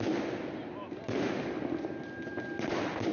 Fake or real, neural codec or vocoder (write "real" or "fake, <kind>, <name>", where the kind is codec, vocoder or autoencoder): real